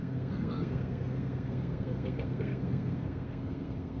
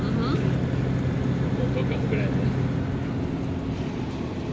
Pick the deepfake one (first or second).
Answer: first